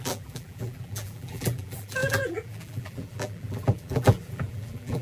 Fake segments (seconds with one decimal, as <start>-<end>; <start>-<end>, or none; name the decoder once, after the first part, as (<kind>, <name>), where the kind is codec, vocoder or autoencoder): 0.0-5.0 (vocoder, BigVGAN v2)